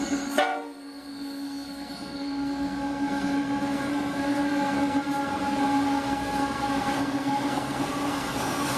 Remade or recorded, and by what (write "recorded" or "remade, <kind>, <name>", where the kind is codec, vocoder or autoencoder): remade, codec, SNAC